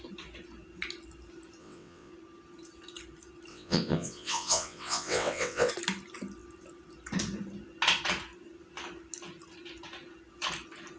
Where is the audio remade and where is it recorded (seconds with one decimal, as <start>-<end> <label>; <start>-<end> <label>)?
0.0-1.6 recorded; 1.6-2.1 remade; 2.1-3.5 recorded; 3.5-5.7 remade; 5.7-11.0 recorded